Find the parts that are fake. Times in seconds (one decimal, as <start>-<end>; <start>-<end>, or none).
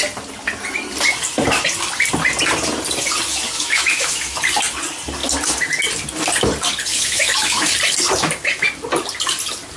3.3-4.4; 6.9-7.7